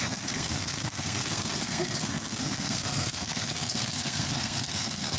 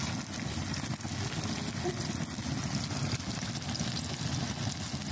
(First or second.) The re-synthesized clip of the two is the first